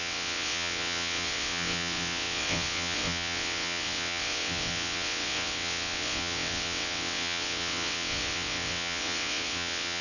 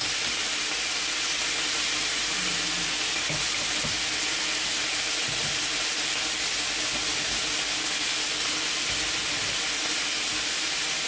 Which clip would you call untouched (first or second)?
second